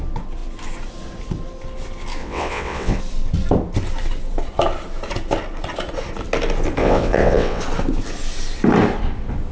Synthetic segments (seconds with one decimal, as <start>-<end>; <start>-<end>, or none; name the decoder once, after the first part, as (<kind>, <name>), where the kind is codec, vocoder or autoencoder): 2.2-3.0 (vocoder, WaveNeXt); 6.8-7.6

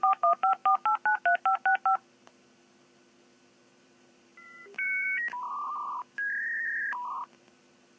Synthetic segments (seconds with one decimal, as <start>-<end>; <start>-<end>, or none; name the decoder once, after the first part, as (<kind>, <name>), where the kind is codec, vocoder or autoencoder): 0.0-0.6 (vocoder, BigVGAN v2); 3.7-8.0